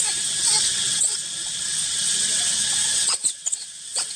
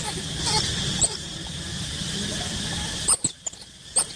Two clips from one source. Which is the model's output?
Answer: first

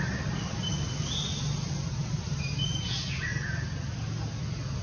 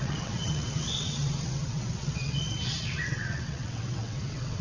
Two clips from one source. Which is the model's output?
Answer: second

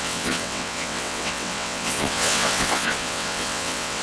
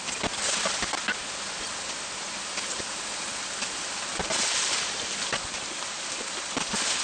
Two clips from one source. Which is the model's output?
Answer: first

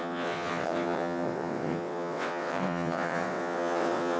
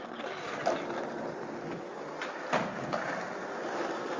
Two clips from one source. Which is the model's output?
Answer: first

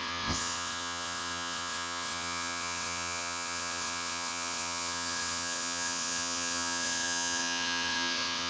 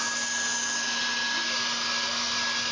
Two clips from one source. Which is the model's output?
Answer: first